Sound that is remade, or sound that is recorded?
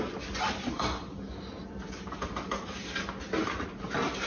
recorded